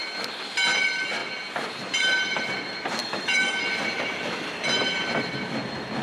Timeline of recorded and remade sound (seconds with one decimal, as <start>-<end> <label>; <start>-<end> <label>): 0.0-3.0 recorded; 3.0-3.6 remade; 3.6-6.0 recorded